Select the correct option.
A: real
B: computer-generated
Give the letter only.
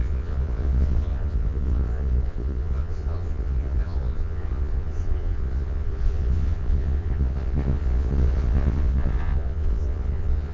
B